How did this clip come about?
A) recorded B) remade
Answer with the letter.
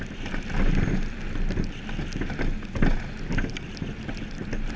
A